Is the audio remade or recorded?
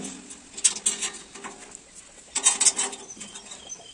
recorded